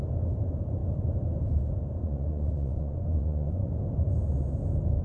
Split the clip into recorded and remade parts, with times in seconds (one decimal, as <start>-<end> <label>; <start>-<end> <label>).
0.0-2.0 recorded; 2.0-3.7 remade; 3.7-5.0 recorded